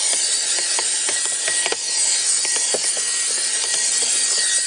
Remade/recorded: recorded